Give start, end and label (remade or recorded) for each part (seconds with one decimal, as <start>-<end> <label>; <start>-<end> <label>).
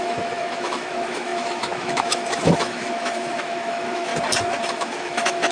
0.0-4.1 remade; 4.1-4.6 recorded; 4.6-5.5 remade